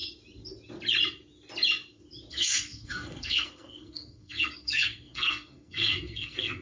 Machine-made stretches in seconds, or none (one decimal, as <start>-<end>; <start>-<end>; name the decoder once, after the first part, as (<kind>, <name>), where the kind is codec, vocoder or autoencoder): 2.3-6.6 (codec, SNAC)